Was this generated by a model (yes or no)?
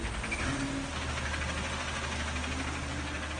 no